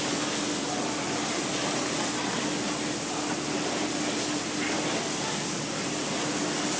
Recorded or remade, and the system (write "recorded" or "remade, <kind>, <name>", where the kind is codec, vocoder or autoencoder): recorded